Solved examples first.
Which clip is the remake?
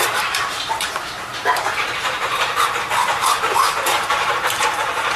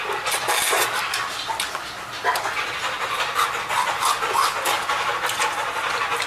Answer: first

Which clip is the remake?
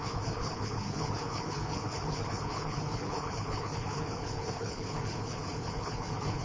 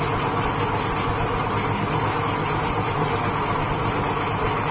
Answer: first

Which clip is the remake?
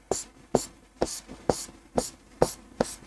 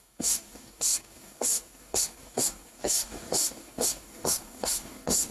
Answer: second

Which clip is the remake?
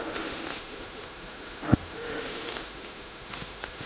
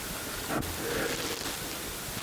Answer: first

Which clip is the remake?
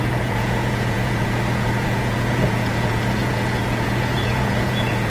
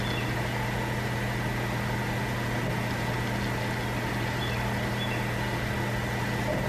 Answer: first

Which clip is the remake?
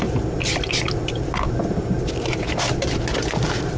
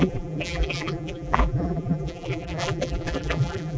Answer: second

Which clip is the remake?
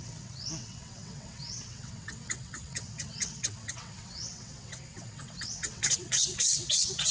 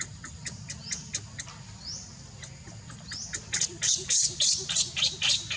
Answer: first